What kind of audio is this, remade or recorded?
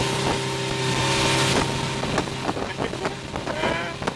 recorded